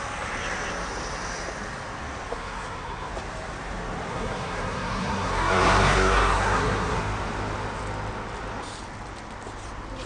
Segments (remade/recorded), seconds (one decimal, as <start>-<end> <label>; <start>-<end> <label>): 0.0-2.3 recorded; 2.3-3.1 remade; 3.1-4.1 recorded; 4.1-7.0 remade; 7.0-10.1 recorded